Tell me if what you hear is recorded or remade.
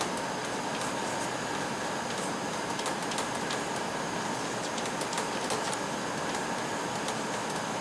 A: recorded